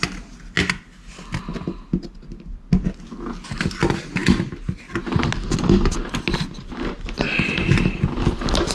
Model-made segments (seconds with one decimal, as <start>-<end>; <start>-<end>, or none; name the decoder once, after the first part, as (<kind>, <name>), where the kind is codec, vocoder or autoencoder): none